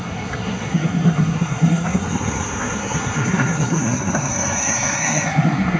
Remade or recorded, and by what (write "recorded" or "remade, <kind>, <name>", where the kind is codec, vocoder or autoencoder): remade, codec, SNAC